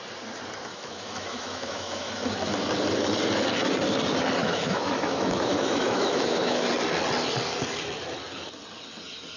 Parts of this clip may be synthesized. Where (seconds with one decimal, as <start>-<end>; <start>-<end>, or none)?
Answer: 0.7-2.1; 4.4-6.7